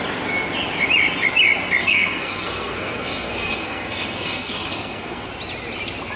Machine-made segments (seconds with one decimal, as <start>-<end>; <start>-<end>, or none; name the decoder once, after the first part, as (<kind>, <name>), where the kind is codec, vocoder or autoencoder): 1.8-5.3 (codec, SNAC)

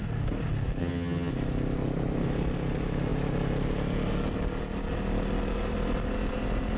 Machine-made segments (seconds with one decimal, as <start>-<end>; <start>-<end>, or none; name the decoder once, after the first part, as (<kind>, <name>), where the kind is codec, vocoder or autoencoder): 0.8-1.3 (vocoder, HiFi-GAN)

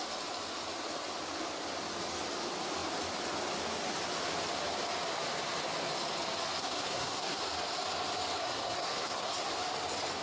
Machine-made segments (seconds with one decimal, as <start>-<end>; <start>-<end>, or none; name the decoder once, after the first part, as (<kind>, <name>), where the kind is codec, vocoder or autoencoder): 6.6-7.4 (codec, SNAC); 8.4-9.5